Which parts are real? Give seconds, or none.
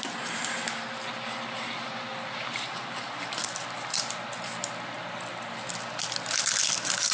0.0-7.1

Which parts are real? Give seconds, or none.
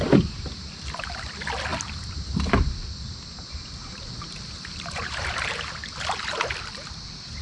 0.0-3.8; 5.6-7.4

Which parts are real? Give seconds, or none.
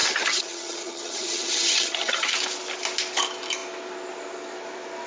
2.3-5.1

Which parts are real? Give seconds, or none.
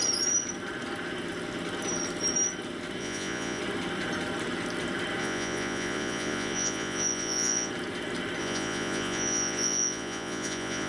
0.0-3.0; 3.6-5.2; 7.7-8.4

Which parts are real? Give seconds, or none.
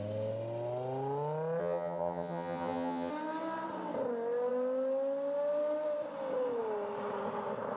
0.0-1.6; 3.1-7.8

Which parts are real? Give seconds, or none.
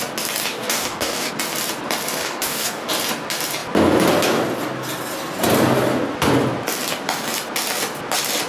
0.0-0.4; 1.3-2.2; 2.9-8.5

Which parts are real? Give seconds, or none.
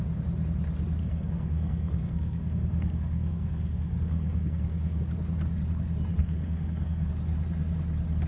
0.0-1.0; 5.0-6.1; 7.1-8.3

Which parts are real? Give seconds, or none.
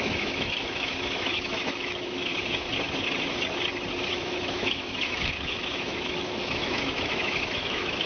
2.3-4.1